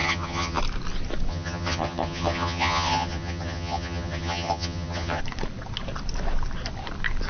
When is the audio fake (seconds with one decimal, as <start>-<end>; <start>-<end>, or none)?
0.0-0.6; 1.3-5.2